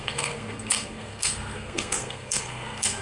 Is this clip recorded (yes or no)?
no